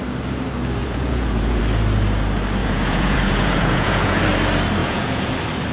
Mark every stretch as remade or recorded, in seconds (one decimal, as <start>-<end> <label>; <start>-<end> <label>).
0.0-0.8 recorded; 0.8-1.6 remade; 1.6-2.6 recorded; 2.6-4.2 remade; 4.2-4.8 recorded; 4.8-5.3 remade; 5.3-5.7 recorded